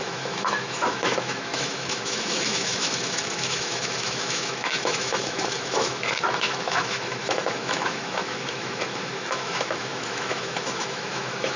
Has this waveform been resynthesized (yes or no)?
yes